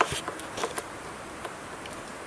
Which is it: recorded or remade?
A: recorded